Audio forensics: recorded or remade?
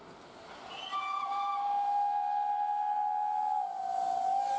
recorded